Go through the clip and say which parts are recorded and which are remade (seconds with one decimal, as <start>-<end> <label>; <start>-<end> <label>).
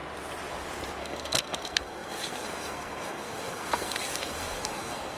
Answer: 0.0-1.0 recorded; 1.0-5.2 remade